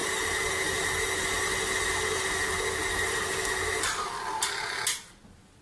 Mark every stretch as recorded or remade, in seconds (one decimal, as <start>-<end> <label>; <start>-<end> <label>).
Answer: 0.0-5.6 recorded